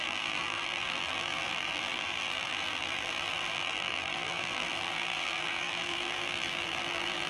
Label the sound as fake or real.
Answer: fake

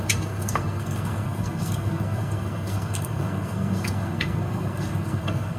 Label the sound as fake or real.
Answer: fake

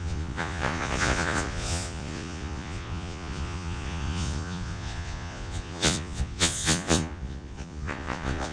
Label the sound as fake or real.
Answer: fake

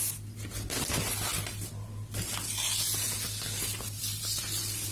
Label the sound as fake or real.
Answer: real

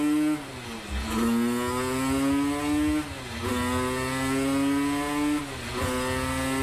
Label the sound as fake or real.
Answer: real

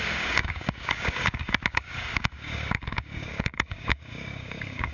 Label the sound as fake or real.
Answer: fake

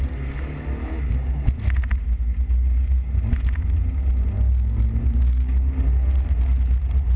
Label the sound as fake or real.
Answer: real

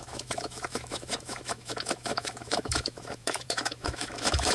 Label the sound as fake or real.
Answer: fake